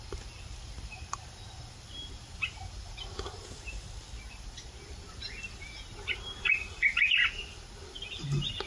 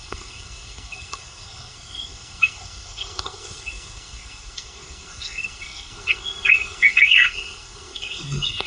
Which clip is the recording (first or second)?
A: first